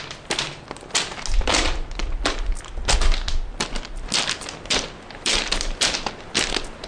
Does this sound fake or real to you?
real